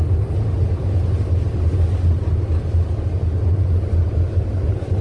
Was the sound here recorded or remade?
recorded